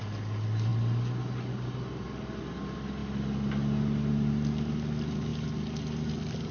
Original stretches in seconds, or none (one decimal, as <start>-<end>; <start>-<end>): 0.0-6.5